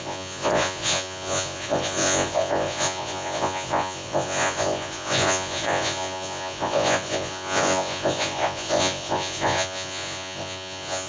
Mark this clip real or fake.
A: fake